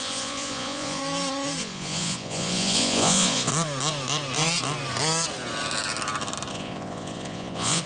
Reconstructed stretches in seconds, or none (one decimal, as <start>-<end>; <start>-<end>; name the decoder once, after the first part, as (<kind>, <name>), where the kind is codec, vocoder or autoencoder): 0.0-1.0 (vocoder, Vocos); 1.6-3.5; 6.5-7.9